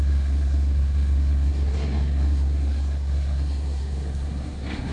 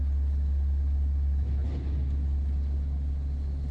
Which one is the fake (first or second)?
first